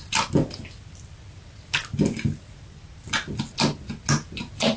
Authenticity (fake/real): real